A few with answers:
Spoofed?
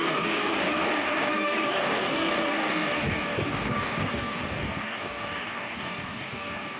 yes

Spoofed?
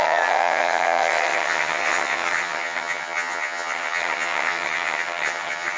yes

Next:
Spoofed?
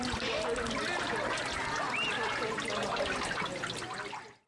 no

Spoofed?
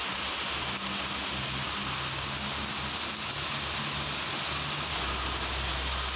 no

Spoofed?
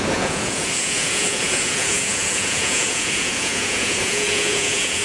yes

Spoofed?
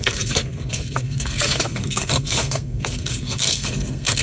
yes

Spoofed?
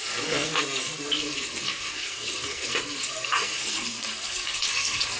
yes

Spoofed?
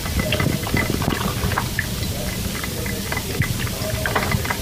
no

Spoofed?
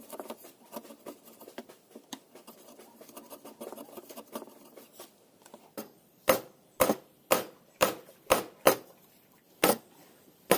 yes